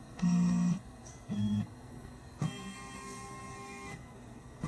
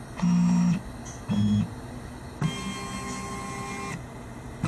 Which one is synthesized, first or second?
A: first